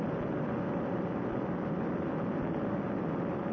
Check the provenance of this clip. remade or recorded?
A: recorded